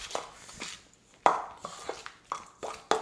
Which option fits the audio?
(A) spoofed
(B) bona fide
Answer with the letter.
B